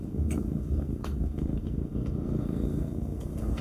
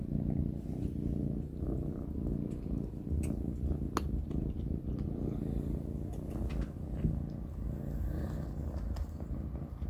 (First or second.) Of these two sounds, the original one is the second